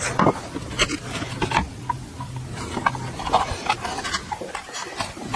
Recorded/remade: recorded